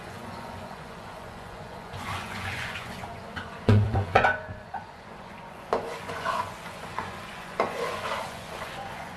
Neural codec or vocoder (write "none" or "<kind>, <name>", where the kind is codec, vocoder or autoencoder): vocoder, Vocos